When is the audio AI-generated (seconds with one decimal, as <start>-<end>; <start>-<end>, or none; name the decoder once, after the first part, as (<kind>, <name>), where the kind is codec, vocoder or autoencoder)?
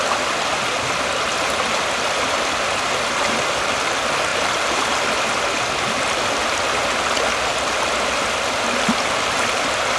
none